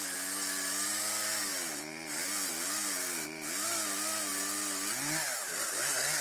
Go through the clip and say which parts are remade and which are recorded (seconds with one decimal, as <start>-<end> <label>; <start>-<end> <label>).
0.0-6.2 recorded